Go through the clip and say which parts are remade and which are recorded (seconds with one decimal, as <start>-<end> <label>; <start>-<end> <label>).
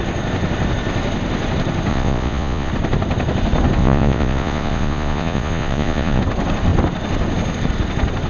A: 0.0-1.9 recorded; 1.9-2.7 remade; 2.7-3.8 recorded; 3.8-6.2 remade; 6.2-8.3 recorded